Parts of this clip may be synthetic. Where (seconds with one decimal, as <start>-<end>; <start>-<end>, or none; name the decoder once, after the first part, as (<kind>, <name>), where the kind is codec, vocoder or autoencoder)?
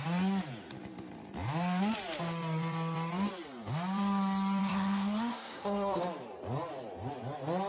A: 4.6-6.0 (codec, SNAC)